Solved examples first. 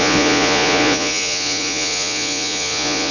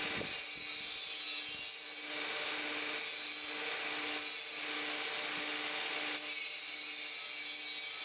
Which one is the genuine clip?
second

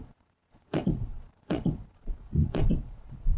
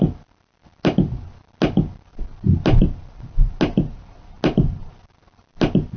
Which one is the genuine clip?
second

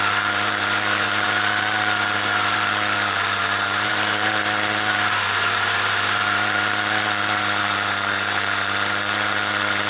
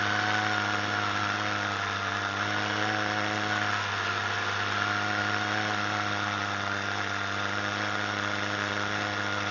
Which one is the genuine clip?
second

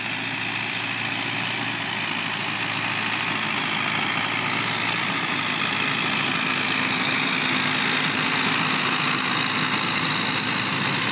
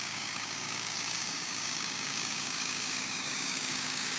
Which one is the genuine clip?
first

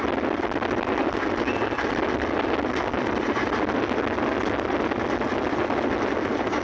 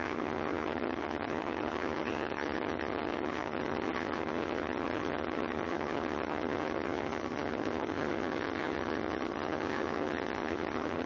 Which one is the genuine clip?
first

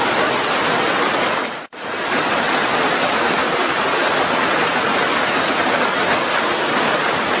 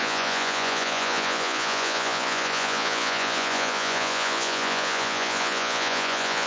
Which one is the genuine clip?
first